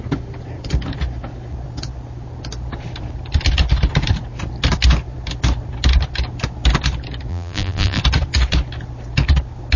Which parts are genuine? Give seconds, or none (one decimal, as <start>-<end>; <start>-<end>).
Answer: 0.0-7.3; 8.0-9.8